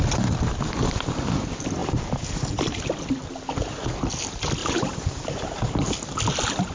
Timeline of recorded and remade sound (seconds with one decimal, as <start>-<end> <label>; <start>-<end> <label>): 0.0-1.8 recorded; 1.8-2.8 remade; 2.8-4.6 recorded; 4.6-5.9 remade; 5.9-6.7 recorded